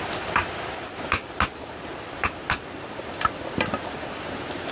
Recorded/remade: remade